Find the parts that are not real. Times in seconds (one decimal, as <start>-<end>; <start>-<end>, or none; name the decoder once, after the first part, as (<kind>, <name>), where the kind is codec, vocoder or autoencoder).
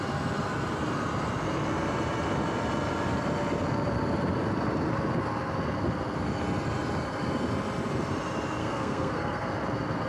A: 8.6-9.5 (codec, SNAC)